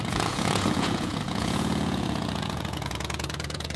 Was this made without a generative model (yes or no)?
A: no